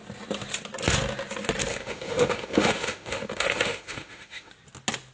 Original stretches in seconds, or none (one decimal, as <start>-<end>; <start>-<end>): 0.0-1.7; 4.5-5.1